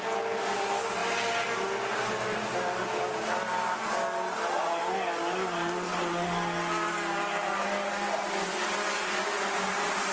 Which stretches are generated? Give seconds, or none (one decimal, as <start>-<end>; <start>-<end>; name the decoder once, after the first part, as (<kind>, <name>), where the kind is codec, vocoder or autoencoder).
none